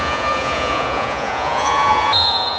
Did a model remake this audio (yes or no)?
yes